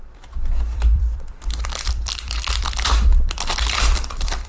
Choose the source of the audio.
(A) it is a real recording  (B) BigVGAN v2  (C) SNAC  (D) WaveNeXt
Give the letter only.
B